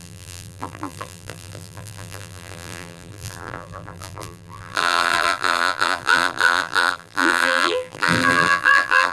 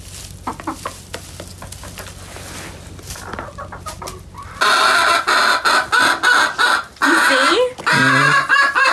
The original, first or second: second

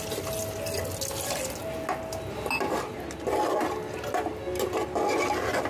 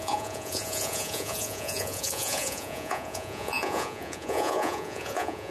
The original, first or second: first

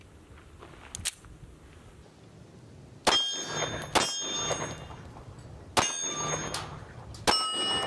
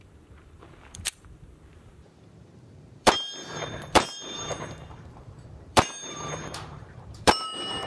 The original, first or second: first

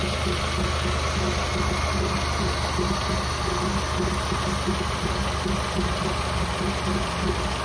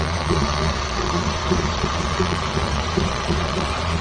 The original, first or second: first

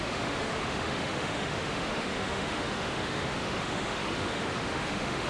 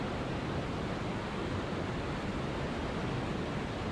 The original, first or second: second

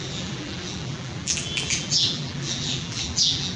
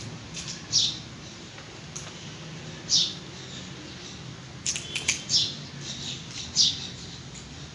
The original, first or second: second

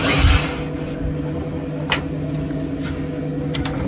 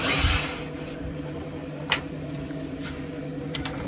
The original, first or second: first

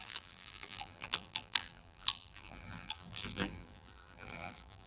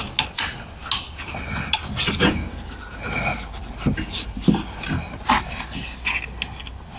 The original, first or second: second